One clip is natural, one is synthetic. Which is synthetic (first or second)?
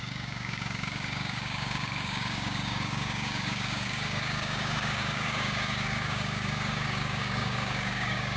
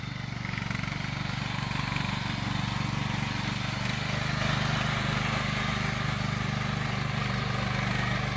first